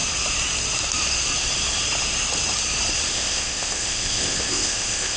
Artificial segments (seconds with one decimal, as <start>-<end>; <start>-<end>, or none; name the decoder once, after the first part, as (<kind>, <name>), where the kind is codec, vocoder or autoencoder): 3.1-5.2 (codec, ZipCodec)

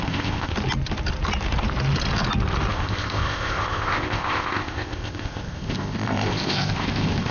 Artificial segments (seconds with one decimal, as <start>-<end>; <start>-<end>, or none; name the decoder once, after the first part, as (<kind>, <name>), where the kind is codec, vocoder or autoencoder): 0.0-0.5 (codec, ZipCodec); 2.7-7.3

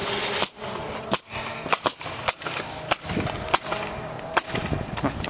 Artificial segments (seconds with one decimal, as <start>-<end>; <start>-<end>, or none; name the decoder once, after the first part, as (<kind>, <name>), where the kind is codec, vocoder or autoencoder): none